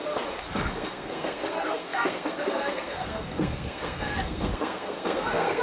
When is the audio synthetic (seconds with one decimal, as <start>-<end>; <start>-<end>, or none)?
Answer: 0.5-5.6